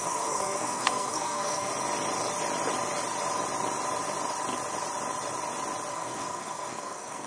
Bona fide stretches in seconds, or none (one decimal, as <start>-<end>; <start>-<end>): 1.7-5.9